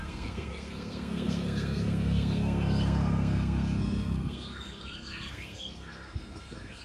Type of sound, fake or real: fake